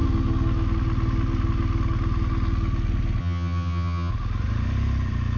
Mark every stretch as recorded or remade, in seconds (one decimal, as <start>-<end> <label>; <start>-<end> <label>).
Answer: 0.0-3.2 recorded; 3.2-4.1 remade; 4.1-5.4 recorded